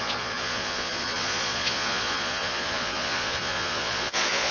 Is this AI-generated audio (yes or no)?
yes